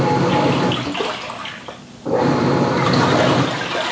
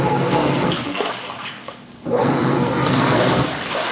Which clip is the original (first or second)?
first